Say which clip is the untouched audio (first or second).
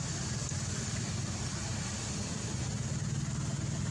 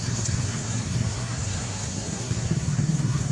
first